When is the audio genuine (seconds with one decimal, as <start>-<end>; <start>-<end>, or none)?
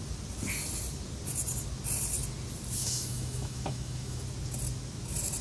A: 0.0-2.8; 4.2-5.4